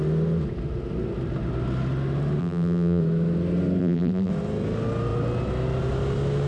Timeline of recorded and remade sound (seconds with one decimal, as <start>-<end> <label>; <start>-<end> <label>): 0.0-2.4 recorded; 2.4-3.0 remade; 3.0-3.8 recorded; 3.8-4.3 remade; 4.3-6.5 recorded